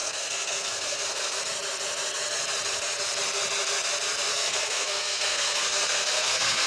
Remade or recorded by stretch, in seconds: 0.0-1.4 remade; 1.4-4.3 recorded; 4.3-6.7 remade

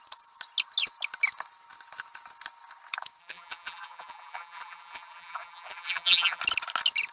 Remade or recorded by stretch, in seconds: 0.0-3.2 recorded; 3.2-6.4 remade; 6.4-7.1 recorded

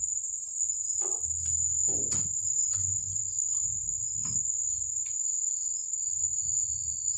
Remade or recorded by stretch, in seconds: 0.0-7.2 recorded

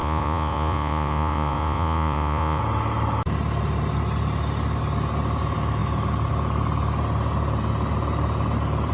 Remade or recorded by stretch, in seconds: 0.0-2.6 remade; 2.6-8.9 recorded

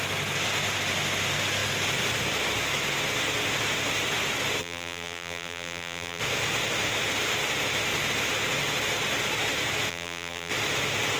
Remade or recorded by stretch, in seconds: 0.0-4.6 recorded; 4.6-6.2 remade; 6.2-9.9 recorded; 9.9-10.5 remade; 10.5-11.2 recorded

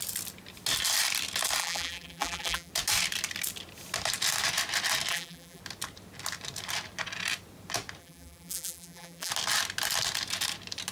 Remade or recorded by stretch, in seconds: 0.0-1.6 recorded; 1.6-2.7 remade; 2.7-5.1 recorded; 5.1-5.6 remade; 5.6-8.0 recorded; 8.0-9.3 remade; 9.3-10.9 recorded

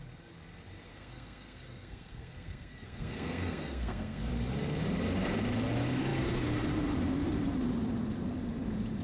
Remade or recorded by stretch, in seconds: 0.0-0.9 recorded; 0.9-4.3 remade; 4.3-9.0 recorded